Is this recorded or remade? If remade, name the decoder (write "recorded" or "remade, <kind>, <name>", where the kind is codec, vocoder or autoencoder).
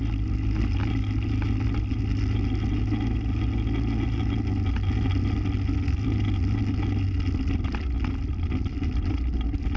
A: recorded